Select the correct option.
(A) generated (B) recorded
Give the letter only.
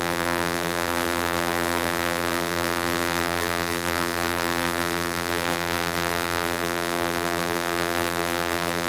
A